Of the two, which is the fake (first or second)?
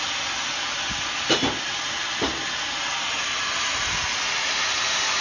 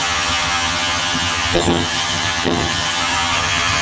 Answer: second